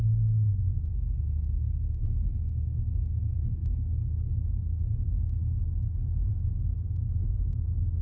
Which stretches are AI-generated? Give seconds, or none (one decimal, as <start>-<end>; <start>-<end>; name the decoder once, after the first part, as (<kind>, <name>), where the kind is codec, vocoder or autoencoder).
none